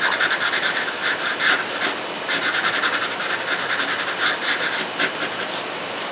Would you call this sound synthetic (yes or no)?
no